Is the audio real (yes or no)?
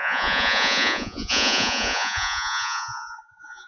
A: no